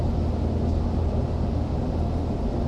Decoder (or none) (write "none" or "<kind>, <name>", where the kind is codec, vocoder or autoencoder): none